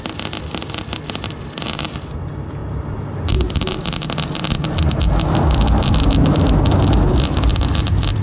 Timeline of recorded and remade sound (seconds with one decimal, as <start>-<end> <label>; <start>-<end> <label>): 0.0-7.5 recorded; 7.5-8.2 remade